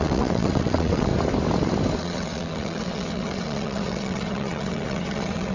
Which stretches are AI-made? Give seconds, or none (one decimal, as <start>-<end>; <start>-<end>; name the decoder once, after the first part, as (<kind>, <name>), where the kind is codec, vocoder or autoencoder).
0.0-1.1 (vocoder, WaveNeXt); 2.0-5.5